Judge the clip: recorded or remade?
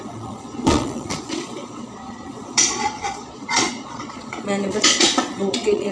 remade